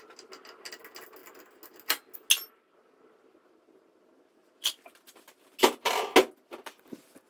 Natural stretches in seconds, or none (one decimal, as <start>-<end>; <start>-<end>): 0.0-7.3